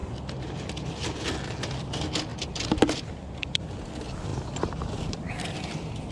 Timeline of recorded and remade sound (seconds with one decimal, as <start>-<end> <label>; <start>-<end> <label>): 0.0-2.3 recorded; 2.3-3.6 remade; 3.6-4.3 recorded; 4.3-5.3 remade; 5.3-6.1 recorded